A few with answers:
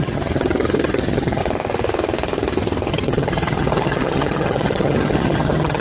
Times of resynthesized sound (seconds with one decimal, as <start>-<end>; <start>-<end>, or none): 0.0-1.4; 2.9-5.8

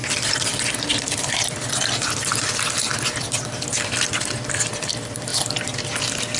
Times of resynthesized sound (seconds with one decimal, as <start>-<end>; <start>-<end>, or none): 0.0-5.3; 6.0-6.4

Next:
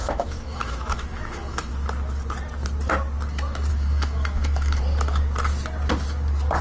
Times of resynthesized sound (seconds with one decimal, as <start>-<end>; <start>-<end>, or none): 0.0-1.7; 3.7-4.8

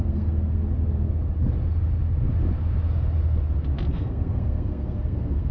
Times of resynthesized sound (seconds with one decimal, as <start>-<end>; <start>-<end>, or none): 0.0-0.6; 3.9-5.5

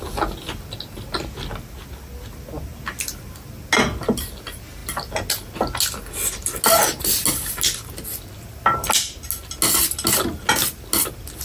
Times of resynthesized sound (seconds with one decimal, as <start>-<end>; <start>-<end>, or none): none

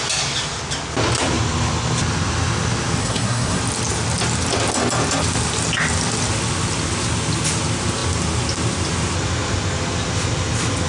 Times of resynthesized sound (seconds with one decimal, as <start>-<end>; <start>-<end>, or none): 3.0-3.6